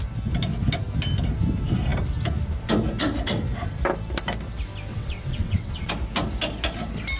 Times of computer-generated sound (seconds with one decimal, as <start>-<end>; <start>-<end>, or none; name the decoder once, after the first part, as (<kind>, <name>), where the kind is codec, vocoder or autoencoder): 4.9-5.9 (vocoder, WaveNeXt)